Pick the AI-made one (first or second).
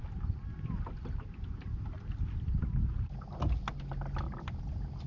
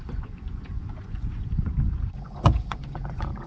second